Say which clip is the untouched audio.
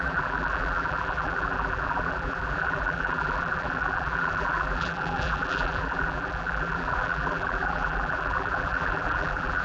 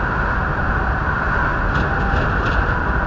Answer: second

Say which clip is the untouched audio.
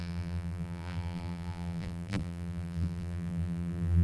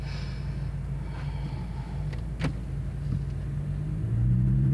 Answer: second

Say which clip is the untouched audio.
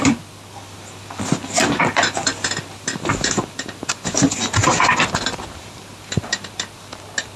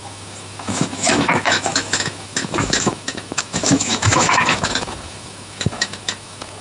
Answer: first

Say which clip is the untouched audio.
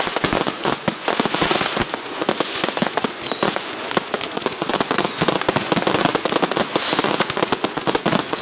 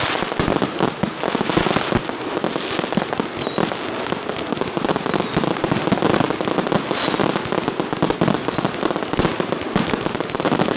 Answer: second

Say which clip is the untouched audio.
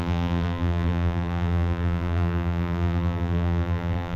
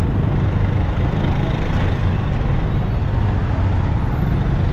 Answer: second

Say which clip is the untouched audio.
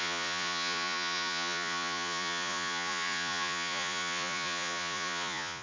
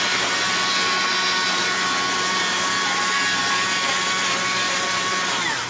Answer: second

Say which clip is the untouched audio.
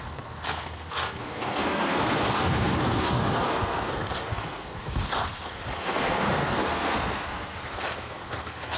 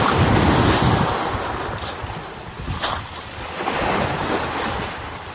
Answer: second